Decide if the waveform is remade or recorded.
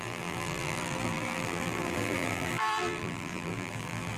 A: remade